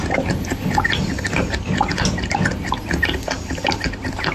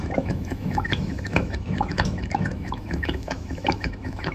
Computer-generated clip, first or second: second